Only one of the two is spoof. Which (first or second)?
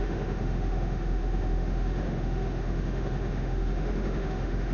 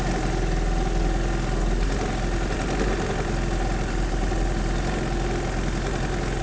first